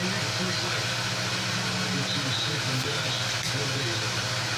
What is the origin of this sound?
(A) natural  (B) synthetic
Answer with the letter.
A